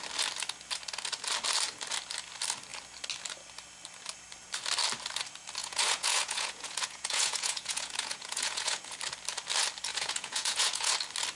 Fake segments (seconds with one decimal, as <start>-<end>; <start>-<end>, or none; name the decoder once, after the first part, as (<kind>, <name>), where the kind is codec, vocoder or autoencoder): 5.6-9.0 (vocoder, Vocos); 9.9-10.9